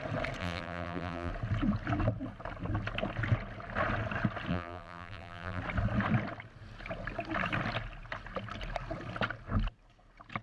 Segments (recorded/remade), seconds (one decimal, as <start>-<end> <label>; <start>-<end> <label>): 0.0-0.4 recorded; 0.4-1.3 remade; 1.3-4.5 recorded; 4.5-5.6 remade; 5.6-10.4 recorded